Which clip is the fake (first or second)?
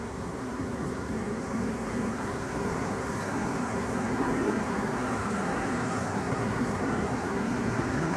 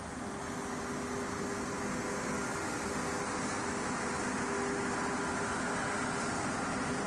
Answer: first